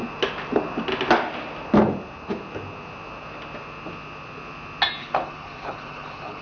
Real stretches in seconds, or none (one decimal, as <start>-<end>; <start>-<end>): 0.0-5.0